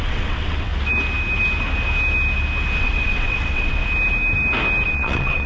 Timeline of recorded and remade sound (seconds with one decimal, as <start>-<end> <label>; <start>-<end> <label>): 0.0-0.7 remade; 0.7-2.8 recorded; 2.8-3.8 remade; 3.8-4.9 recorded; 4.9-5.5 remade